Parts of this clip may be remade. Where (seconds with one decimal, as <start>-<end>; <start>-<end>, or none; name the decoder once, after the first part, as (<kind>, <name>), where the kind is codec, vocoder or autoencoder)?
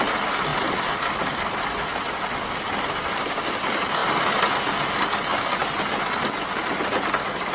none